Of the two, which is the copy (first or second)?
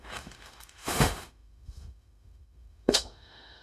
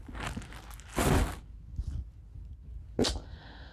first